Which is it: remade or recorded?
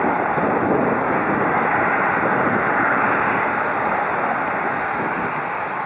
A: recorded